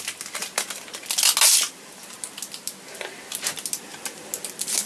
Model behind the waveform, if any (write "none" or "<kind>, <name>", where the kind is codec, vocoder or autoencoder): none